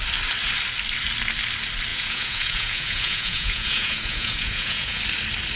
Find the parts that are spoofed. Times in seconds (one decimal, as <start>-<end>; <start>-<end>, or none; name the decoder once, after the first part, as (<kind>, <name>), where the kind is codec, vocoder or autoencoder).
1.9-5.0 (vocoder, Vocos)